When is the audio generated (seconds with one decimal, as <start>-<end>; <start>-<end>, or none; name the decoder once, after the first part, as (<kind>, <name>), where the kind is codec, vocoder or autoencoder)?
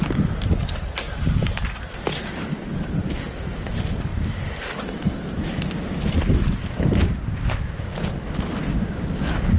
none